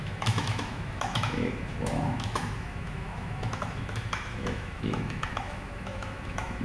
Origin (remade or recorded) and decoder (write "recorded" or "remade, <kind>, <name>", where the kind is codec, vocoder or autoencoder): remade, autoencoder, DAC-VAE